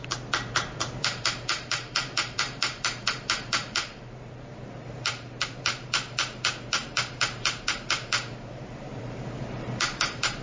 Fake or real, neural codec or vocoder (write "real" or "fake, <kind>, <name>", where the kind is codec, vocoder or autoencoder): fake, vocoder, BigVGAN v2